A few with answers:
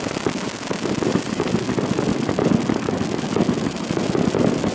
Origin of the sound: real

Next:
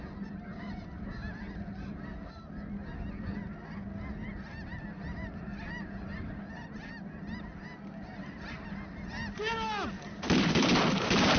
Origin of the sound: real